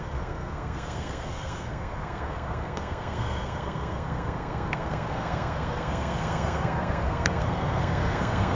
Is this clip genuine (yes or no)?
no